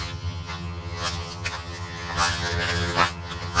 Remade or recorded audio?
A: remade